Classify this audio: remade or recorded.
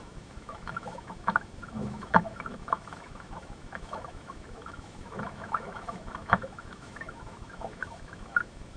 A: remade